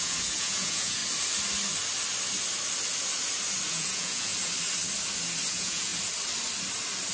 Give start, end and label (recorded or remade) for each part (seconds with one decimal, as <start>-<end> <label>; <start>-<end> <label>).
0.0-1.0 remade; 1.0-3.7 recorded; 3.7-4.3 remade; 4.3-5.5 recorded; 5.5-5.9 remade; 5.9-7.1 recorded